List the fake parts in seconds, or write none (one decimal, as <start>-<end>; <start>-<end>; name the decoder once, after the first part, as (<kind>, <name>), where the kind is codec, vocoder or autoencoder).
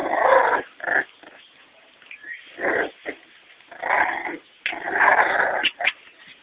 none